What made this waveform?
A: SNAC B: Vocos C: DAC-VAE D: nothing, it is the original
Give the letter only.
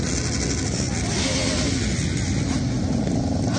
D